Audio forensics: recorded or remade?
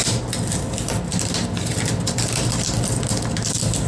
recorded